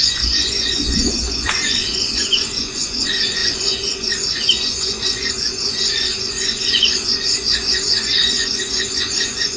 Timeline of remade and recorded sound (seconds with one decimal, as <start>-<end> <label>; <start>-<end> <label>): 0.0-9.6 remade